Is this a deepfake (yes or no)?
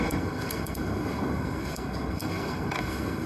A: yes